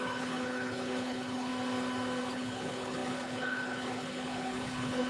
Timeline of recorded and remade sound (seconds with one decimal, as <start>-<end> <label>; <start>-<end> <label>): 0.0-1.5 remade; 1.5-2.2 recorded; 2.2-5.1 remade